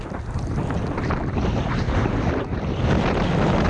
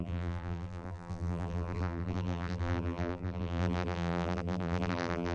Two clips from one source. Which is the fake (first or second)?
second